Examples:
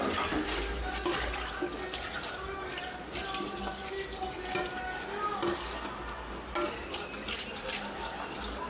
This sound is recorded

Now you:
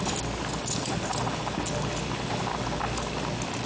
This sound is recorded